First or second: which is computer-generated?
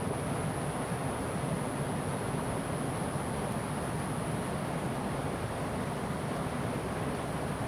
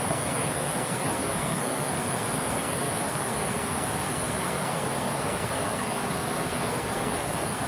second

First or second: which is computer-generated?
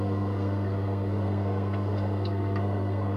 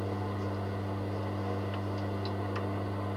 first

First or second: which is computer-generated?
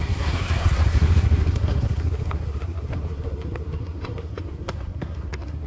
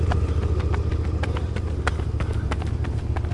first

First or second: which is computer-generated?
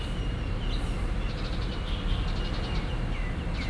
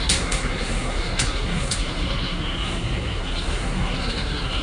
second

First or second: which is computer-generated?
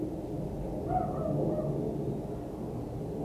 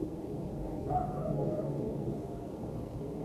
second